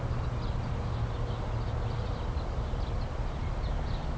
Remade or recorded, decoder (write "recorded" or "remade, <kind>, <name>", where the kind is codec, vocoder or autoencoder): recorded